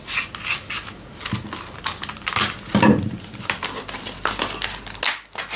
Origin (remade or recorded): recorded